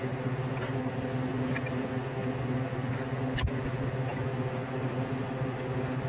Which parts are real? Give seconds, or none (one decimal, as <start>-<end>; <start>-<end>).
0.0-6.1